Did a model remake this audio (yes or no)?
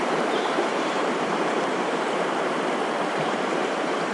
yes